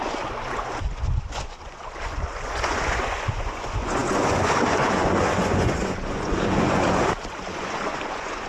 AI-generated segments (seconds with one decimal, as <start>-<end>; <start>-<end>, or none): 0.0-8.5